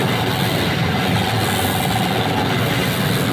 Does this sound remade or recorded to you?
recorded